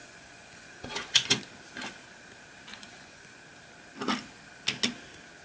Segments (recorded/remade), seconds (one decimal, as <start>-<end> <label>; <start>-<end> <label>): 0.0-1.4 remade; 1.4-2.7 recorded; 2.7-3.4 remade; 3.4-5.4 recorded